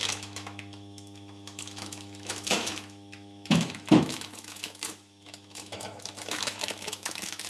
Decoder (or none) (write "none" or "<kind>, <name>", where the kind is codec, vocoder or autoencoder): autoencoder, DAC-VAE